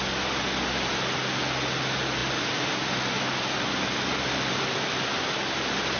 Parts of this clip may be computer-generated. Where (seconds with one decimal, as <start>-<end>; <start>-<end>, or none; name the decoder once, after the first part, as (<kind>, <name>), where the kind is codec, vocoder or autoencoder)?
2.2-5.2 (vocoder, BigVGAN v2)